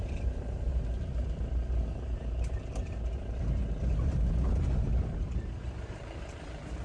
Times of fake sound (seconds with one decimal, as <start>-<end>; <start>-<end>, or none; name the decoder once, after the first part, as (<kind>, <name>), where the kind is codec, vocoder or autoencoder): 0.0-0.7 (vocoder, BigVGAN v2); 4.8-6.8